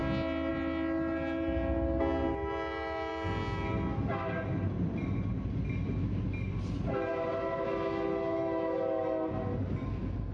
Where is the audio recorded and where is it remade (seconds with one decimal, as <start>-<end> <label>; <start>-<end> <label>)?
0.0-10.3 recorded